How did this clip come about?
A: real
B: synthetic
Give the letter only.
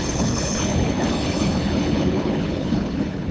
B